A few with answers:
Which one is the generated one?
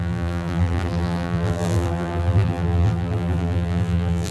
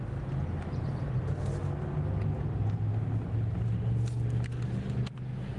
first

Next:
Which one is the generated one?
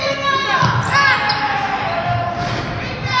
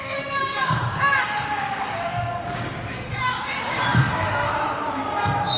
second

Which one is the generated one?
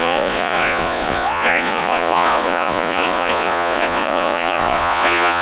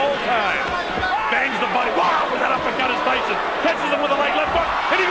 first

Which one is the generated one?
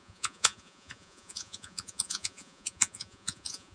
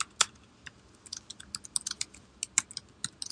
first